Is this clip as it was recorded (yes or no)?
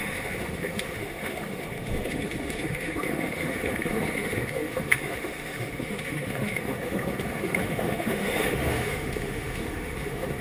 no